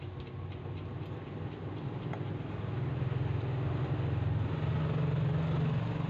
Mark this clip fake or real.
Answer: real